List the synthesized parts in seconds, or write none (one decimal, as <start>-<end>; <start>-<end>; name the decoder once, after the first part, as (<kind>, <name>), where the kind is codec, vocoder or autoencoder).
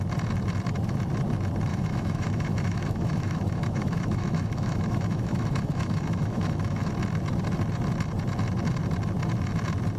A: 1.7-6.9 (autoencoder, DAC-VAE)